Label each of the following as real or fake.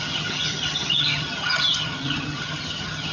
fake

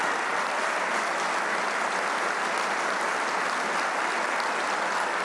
real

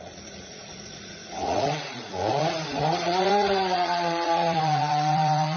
fake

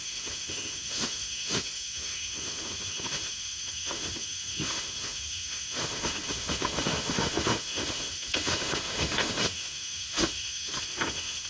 fake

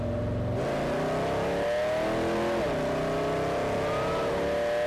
real